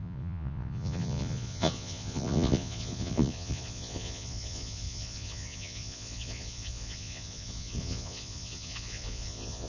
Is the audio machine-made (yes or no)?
yes